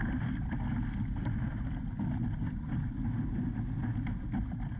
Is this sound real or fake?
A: real